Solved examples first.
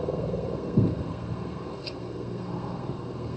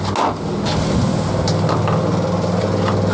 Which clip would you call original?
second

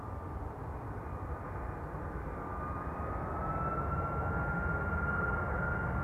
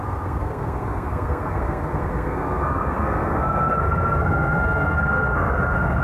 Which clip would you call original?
first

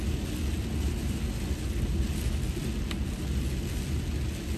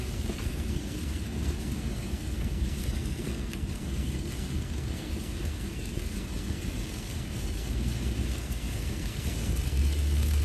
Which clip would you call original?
first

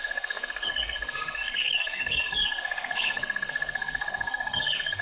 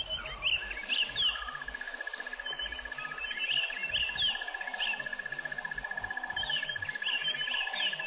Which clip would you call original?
second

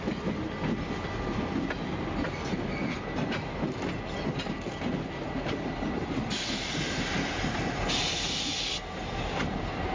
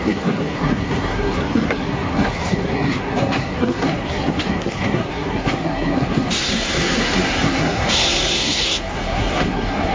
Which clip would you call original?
first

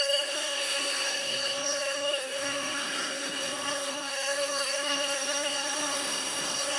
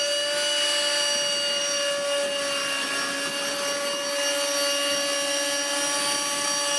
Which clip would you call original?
second